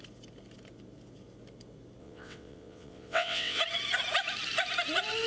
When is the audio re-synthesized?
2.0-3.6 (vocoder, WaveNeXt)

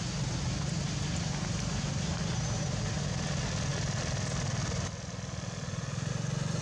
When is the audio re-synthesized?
none

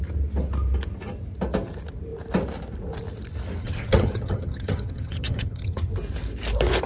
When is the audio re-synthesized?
3.6-5.9 (vocoder, HiFi-GAN)

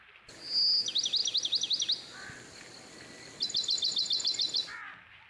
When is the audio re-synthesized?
none

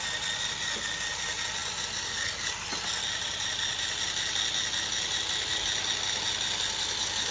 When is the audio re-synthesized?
none

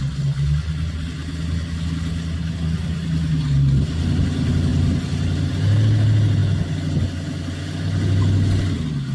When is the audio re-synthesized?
none